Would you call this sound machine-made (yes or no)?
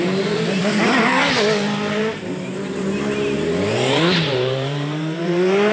yes